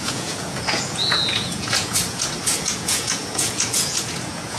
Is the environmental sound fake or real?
fake